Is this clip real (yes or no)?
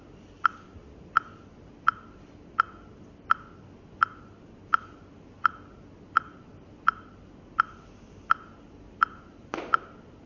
yes